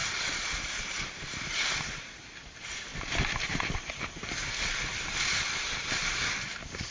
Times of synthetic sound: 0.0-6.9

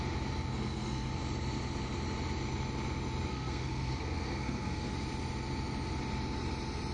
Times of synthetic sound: 0.5-1.1; 3.3-4.9

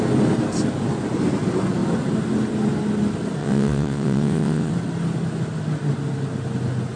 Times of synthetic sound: 3.4-4.7

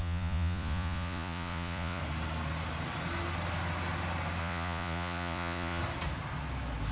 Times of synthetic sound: 0.0-2.0; 4.4-5.8

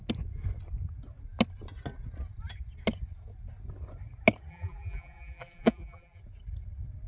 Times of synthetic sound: 4.5-6.2

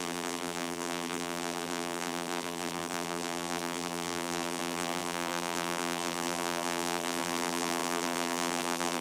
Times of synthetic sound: 0.0-9.0

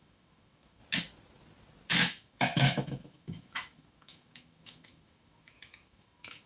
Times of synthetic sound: 0.0-0.8; 1.9-6.5